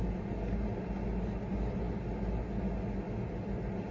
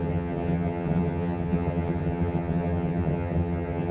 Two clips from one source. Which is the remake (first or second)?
second